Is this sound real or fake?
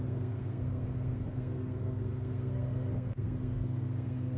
fake